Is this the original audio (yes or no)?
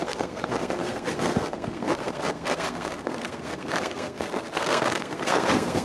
no